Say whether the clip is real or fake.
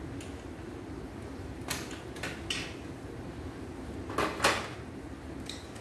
real